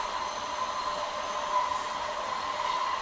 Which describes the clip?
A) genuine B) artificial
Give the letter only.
A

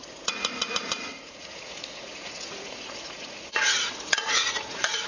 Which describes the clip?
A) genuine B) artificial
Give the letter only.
B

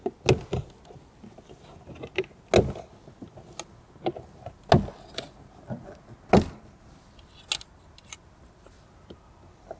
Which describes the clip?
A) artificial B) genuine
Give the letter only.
B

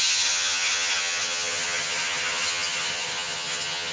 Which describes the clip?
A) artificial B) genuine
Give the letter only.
A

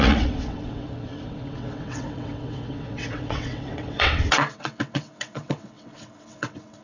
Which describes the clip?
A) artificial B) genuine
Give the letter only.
A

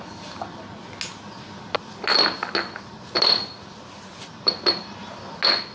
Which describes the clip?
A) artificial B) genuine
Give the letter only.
B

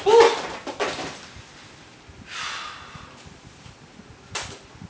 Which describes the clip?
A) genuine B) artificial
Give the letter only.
A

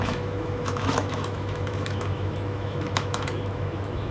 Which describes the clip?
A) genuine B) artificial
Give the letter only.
B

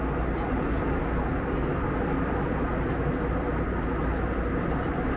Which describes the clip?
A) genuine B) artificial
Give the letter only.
A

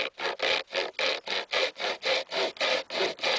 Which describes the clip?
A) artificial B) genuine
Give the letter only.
B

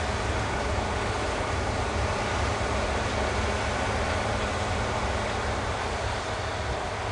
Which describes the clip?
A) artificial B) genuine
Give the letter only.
B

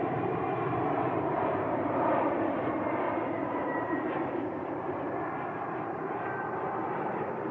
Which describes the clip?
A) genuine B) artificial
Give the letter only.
B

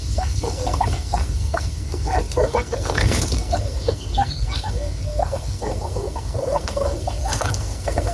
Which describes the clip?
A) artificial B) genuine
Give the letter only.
A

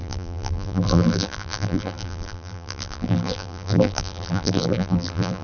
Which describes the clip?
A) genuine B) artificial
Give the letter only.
B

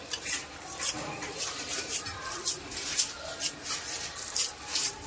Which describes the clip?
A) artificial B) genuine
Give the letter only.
A